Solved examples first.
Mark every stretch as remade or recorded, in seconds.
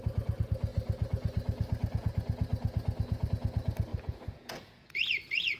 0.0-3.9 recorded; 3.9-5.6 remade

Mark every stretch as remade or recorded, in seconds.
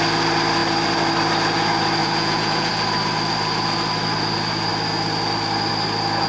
0.0-2.0 recorded; 2.0-2.7 remade; 2.7-6.3 recorded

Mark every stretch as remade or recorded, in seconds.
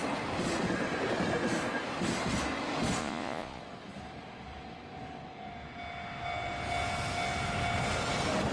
0.0-3.0 recorded; 3.0-3.6 remade; 3.6-8.5 recorded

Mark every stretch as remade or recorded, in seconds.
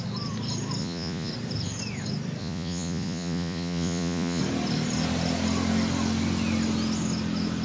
0.0-0.8 recorded; 0.8-1.3 remade; 1.3-2.4 recorded; 2.4-4.4 remade; 4.4-7.6 recorded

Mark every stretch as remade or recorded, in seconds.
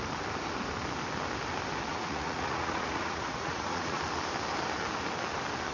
0.0-1.9 recorded; 1.9-4.0 remade; 4.0-5.7 recorded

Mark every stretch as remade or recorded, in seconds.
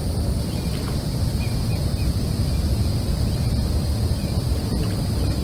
0.0-5.4 recorded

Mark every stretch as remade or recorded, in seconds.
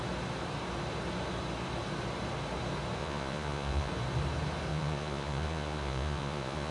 0.0-3.0 recorded; 3.0-3.9 remade; 3.9-4.7 recorded; 4.7-6.7 remade